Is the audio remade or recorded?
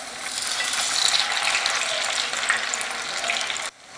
recorded